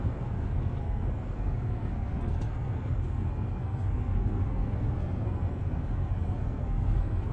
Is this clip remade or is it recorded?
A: remade